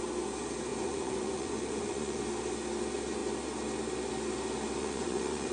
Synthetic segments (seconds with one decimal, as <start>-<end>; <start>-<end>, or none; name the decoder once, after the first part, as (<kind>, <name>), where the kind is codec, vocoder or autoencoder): 0.7-2.2 (vocoder, Vocos); 4.8-5.5